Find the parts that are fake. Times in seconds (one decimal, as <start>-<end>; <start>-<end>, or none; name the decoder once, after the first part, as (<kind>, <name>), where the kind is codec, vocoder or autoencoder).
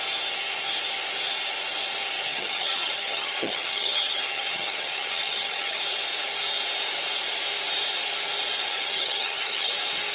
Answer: 2.3-5.8 (vocoder, HiFi-GAN); 8.7-9.7